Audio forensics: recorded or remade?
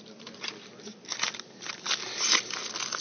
remade